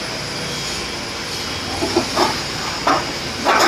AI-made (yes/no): no